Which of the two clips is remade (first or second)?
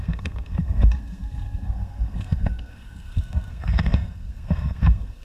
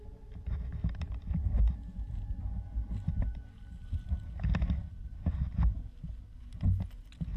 first